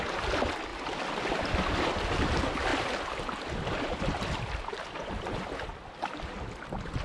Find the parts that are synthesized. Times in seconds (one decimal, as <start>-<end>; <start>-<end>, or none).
0.7-1.3; 2.7-5.2